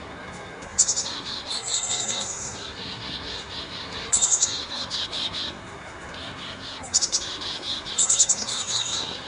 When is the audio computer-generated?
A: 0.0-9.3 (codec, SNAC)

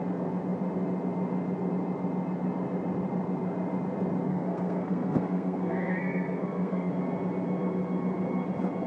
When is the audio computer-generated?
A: 4.3-6.9 (codec, SNAC)